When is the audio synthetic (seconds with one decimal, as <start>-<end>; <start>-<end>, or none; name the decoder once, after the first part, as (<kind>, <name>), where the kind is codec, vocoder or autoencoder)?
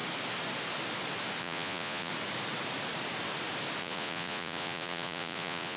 1.4-2.1 (vocoder, Vocos); 3.8-5.8